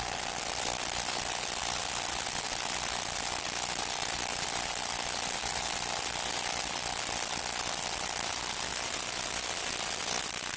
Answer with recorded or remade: recorded